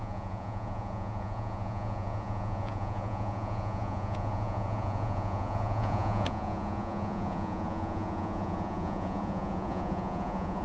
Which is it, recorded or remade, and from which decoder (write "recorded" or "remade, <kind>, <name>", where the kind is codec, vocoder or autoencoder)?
remade, vocoder, Vocos